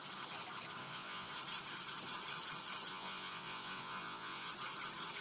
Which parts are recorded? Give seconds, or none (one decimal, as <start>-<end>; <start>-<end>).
0.0-0.8; 1.3-2.9; 4.5-5.2